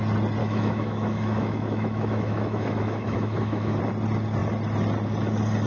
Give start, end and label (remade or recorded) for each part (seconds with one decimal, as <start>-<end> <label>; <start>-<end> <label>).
0.0-0.4 recorded; 0.4-3.8 remade; 3.8-5.7 recorded

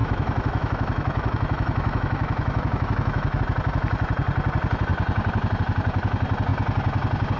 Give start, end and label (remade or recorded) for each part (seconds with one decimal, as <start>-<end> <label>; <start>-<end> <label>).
0.0-3.4 remade; 3.4-7.4 recorded

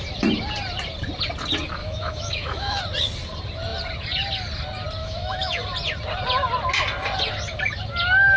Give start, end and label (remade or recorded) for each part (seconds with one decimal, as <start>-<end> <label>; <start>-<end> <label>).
0.0-1.8 recorded; 1.8-2.8 remade; 2.8-5.0 recorded; 5.0-5.6 remade; 5.6-8.4 recorded

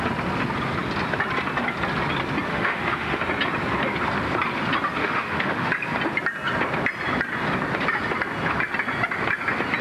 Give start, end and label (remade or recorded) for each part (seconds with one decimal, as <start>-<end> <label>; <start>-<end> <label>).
0.0-2.5 recorded; 2.5-3.2 remade; 3.2-5.0 recorded; 5.0-5.7 remade; 5.7-9.8 recorded